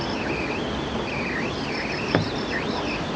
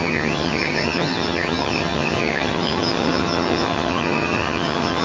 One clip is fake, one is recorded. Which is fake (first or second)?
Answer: second